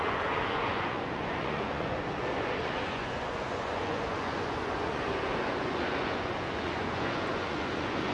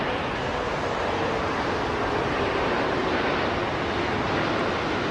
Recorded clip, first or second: second